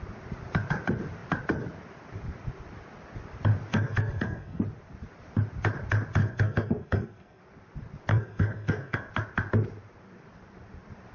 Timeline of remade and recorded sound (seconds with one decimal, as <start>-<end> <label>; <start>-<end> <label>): 0.0-3.7 recorded; 3.7-4.6 remade; 4.6-6.2 recorded; 6.2-7.4 remade; 7.4-8.1 recorded; 8.1-9.1 remade; 9.1-11.1 recorded